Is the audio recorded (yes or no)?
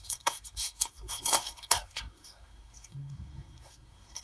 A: no